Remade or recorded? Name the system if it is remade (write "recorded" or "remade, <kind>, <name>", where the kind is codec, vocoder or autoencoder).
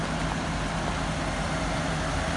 recorded